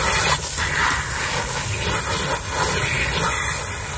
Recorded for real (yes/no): yes